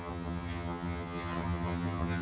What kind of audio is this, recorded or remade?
remade